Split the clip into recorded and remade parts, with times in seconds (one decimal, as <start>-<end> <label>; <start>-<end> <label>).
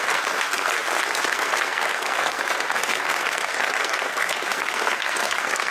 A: 0.0-5.7 remade